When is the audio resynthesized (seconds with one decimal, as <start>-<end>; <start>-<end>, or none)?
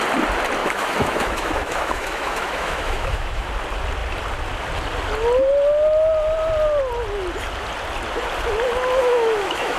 0.6-3.5; 9.0-9.8